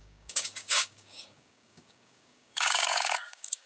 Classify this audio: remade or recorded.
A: remade